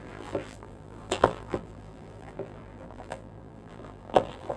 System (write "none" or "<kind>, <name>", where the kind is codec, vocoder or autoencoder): vocoder, BigVGAN v2